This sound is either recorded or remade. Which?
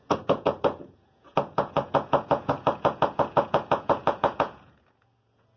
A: remade